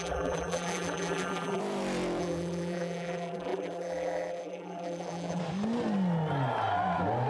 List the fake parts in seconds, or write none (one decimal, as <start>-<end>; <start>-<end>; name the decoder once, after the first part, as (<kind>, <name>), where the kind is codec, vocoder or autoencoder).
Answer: 0.0-1.6 (vocoder, BigVGAN v2); 2.2-5.4